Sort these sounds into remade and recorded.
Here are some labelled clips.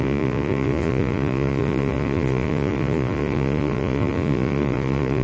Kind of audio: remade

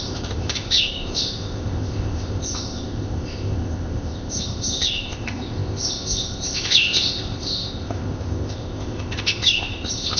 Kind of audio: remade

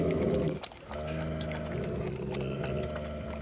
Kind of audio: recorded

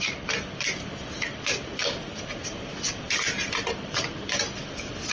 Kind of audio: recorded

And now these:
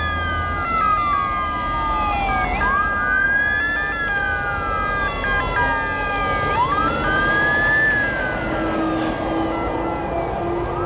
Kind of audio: recorded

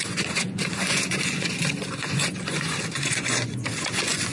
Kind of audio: remade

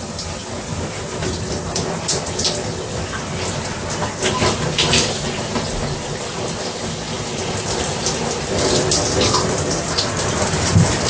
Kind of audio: recorded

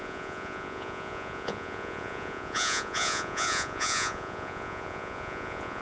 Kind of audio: remade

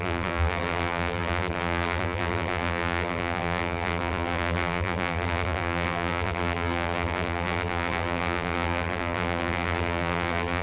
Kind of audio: remade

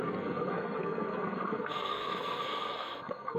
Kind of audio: remade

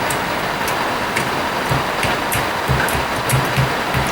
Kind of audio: recorded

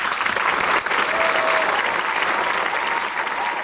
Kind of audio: recorded